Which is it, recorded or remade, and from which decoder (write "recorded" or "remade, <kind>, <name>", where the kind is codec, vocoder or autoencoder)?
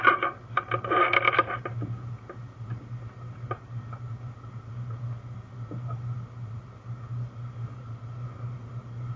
recorded